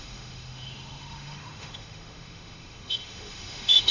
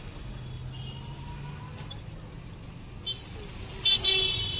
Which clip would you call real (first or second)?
second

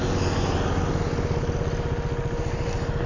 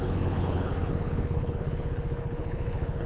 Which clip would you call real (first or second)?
first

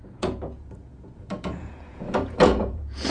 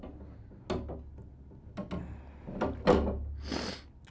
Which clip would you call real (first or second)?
second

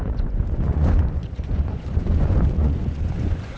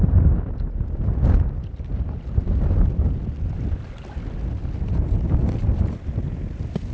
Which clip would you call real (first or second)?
second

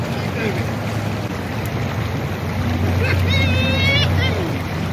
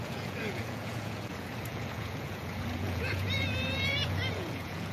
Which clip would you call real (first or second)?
first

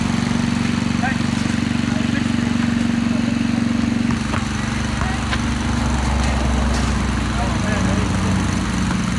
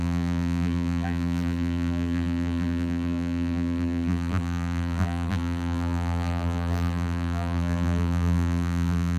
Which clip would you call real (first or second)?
first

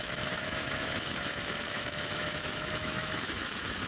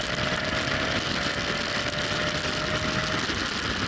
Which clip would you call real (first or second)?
second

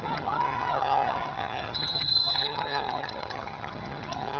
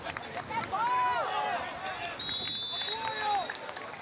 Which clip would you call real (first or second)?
second